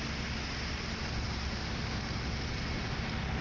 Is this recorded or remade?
recorded